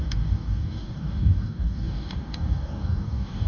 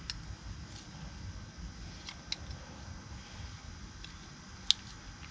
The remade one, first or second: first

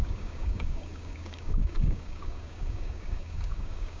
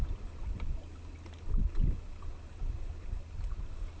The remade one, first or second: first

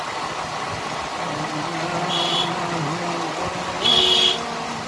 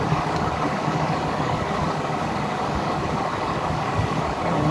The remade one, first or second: second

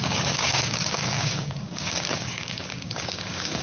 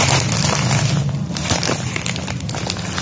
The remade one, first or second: first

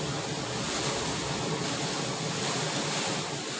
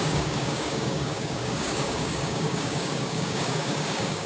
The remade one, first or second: second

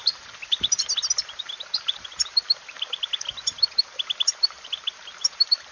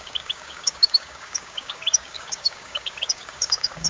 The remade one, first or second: second